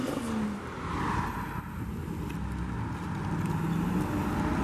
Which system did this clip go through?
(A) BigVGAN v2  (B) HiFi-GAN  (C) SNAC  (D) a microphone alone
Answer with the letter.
D